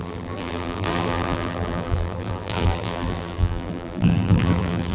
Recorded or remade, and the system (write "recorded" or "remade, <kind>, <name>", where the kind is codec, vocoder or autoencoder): remade, vocoder, BigVGAN v2